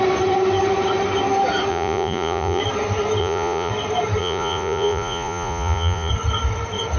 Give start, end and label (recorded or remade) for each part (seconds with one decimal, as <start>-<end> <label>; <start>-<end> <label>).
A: 0.0-1.7 recorded; 1.7-2.6 remade; 2.6-3.2 recorded; 3.2-3.7 remade; 3.7-4.2 recorded; 4.2-6.1 remade; 6.1-7.0 recorded